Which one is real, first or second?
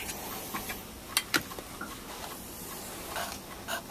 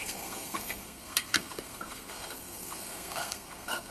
first